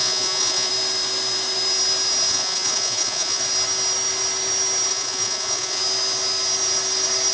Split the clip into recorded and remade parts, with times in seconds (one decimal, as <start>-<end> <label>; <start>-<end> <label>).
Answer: 0.0-0.7 remade; 0.7-2.3 recorded; 2.3-3.4 remade; 3.4-4.9 recorded; 4.9-5.8 remade; 5.8-7.3 recorded